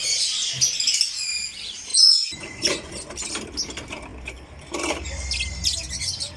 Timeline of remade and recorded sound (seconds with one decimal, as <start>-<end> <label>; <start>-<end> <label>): 0.0-1.9 recorded; 1.9-2.9 remade; 2.9-6.4 recorded